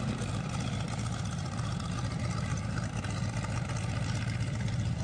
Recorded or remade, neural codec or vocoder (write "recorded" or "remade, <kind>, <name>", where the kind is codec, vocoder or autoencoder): remade, vocoder, BigVGAN v2